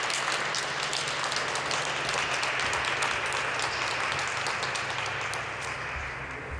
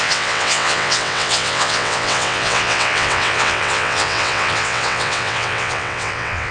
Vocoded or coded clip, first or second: second